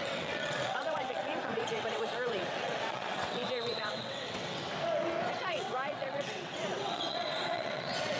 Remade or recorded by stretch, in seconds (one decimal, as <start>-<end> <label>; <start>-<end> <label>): 0.0-4.6 remade; 4.6-5.3 recorded; 5.3-8.2 remade